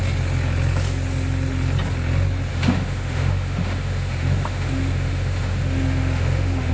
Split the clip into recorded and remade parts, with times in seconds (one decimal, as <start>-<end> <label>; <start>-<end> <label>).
0.0-2.5 recorded; 2.5-6.7 remade